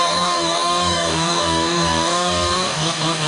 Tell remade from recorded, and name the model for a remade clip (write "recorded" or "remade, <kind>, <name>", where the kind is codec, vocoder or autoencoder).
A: remade, codec, DAC